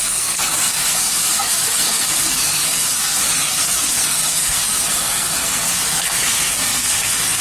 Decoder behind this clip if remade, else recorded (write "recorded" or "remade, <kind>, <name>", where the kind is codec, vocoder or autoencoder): remade, codec, SNAC